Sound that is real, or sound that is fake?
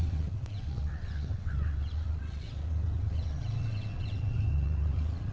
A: fake